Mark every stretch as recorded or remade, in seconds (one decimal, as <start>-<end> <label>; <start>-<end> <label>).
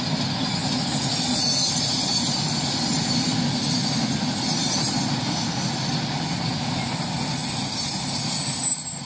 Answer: 0.0-9.0 recorded